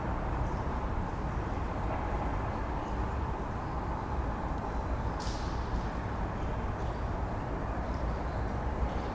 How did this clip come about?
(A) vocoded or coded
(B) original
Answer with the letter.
B